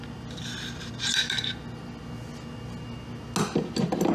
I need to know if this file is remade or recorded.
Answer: recorded